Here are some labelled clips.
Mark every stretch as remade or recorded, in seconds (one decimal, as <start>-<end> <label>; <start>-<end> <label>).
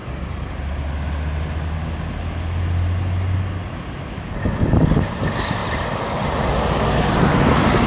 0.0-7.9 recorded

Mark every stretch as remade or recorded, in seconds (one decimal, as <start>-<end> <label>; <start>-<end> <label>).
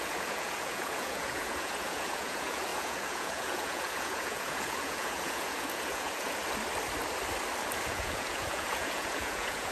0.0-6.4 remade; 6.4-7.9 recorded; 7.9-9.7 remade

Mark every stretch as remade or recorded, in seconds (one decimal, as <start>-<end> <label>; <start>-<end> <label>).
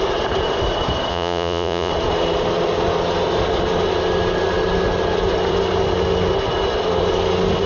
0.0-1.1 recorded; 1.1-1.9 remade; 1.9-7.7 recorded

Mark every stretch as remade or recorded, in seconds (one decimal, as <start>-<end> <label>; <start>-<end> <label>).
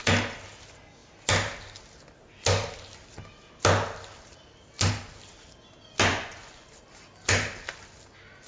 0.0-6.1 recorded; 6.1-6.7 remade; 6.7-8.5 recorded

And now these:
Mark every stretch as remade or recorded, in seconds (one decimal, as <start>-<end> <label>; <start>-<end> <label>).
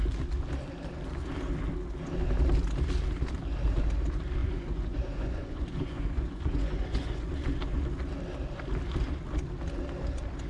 0.0-4.4 recorded; 4.4-7.3 remade; 7.3-10.5 recorded